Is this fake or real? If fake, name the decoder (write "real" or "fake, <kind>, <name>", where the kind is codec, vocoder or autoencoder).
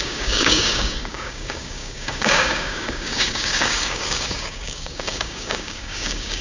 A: fake, codec, DAC